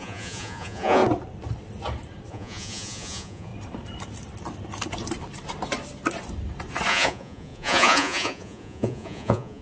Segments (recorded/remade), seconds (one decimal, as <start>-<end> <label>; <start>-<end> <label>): 0.0-1.0 remade; 1.0-2.3 recorded; 2.3-3.5 remade; 3.5-6.9 recorded; 6.9-9.6 remade